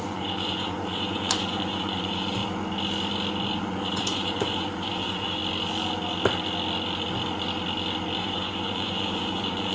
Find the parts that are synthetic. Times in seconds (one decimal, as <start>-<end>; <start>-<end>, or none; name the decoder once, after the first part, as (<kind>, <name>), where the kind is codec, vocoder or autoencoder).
0.0-2.4 (vocoder, Vocos); 3.6-5.4; 8.2-9.7

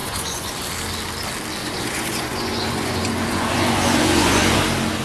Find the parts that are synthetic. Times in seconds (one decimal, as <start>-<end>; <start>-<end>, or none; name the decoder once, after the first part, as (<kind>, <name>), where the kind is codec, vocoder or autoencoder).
0.0-0.5 (vocoder, Vocos); 1.6-4.6

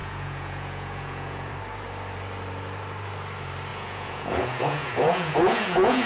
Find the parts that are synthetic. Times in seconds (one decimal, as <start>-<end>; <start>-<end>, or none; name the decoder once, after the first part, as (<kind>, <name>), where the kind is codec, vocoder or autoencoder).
0.0-1.5 (vocoder, Vocos); 3.7-6.1

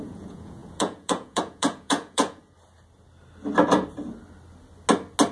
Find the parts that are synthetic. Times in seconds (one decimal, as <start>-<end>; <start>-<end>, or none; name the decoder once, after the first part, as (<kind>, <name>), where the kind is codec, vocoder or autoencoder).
0.0-2.4 (vocoder, Vocos)